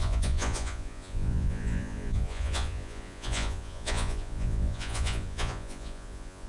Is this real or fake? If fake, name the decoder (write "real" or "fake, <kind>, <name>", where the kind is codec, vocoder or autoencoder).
fake, vocoder, Vocos